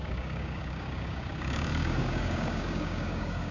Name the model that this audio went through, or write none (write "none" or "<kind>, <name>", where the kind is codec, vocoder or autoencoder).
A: codec, DAC